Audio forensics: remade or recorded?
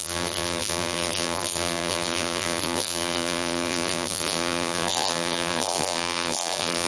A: remade